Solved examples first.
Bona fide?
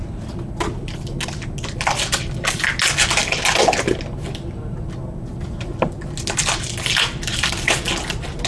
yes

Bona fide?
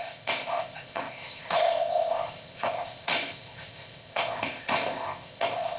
no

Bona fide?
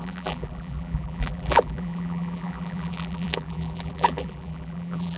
no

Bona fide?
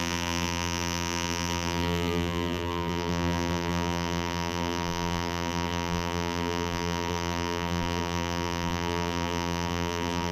no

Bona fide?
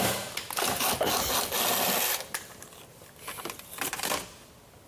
yes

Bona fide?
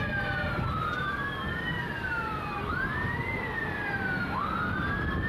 yes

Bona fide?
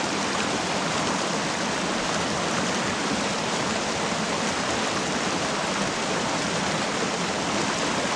yes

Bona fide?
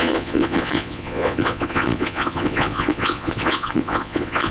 no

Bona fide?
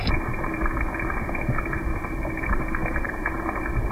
yes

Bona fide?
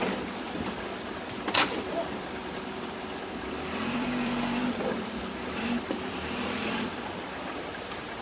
no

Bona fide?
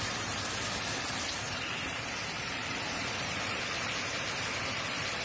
no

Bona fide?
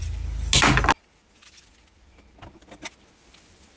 yes